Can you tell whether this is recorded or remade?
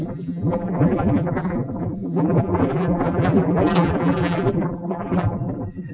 remade